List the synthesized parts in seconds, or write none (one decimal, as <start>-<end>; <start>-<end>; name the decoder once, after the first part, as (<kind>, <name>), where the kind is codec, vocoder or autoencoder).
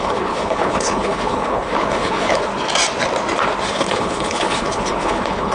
0.0-2.5 (codec, HILCodec); 3.7-5.5